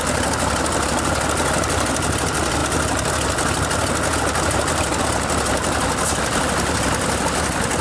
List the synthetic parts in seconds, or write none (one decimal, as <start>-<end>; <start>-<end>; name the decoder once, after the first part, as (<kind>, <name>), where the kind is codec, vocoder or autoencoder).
none

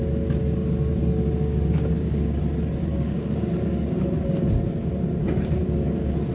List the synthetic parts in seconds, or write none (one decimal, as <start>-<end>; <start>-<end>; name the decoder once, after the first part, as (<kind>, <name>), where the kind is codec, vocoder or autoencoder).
0.4-2.4 (codec, DAC); 2.9-4.0; 5.2-6.3

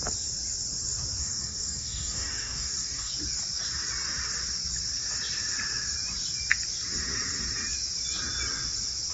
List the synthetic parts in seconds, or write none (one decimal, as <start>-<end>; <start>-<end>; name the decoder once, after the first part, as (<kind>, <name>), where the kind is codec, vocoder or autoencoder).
1.2-3.1 (codec, DAC)

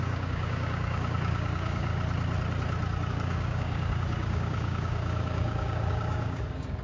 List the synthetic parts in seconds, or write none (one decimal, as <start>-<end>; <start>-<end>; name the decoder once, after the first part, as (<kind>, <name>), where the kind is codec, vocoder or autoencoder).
0.0-1.9 (codec, DAC); 3.1-6.8

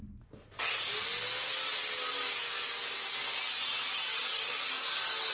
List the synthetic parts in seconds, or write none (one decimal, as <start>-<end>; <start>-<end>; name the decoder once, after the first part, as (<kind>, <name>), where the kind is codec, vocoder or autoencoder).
4.1-5.3 (codec, DAC)

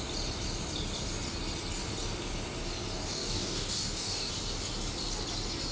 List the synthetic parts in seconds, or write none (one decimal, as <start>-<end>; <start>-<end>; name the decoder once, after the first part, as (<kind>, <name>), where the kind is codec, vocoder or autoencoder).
3.0-4.3 (codec, DAC)